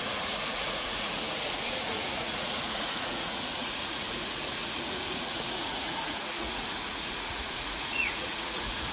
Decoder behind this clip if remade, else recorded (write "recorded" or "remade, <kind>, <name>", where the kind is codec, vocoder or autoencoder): remade, vocoder, Vocos